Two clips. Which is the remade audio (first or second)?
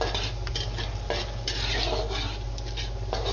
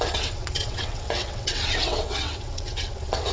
second